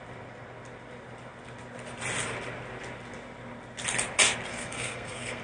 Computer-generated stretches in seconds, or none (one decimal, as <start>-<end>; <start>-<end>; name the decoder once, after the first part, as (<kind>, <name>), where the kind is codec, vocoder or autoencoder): 4.5-5.4 (codec, SNAC)